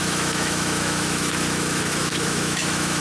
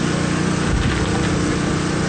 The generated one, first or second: first